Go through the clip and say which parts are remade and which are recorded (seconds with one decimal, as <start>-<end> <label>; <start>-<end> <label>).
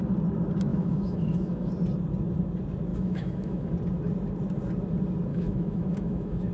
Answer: 0.0-0.7 recorded; 0.7-1.7 remade; 1.7-2.9 recorded; 2.9-3.7 remade; 3.7-5.3 recorded; 5.3-6.5 remade